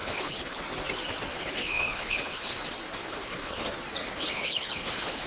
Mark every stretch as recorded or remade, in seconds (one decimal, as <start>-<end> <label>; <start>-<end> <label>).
0.0-0.6 remade; 0.6-1.3 recorded; 1.3-2.6 remade; 2.6-3.0 recorded; 3.0-3.6 remade; 3.6-4.0 recorded; 4.0-5.3 remade